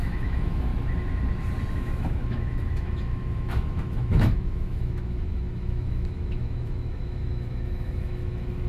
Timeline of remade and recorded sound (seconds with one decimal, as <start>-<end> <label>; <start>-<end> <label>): 0.0-0.7 remade; 0.7-1.7 recorded; 1.7-8.7 remade